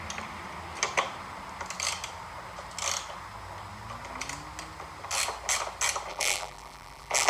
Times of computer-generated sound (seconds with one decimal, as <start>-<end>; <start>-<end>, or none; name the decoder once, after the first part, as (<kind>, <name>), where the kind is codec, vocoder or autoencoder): 6.1-7.3 (vocoder, BigVGAN v2)